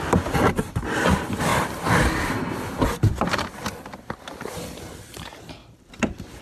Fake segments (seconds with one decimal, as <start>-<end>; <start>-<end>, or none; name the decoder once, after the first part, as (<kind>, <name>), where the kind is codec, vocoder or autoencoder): 0.0-5.6 (vocoder, BigVGAN v2)